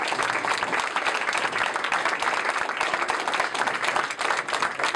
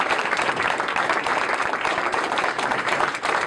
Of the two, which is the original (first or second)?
first